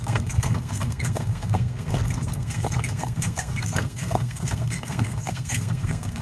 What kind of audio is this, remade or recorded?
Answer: remade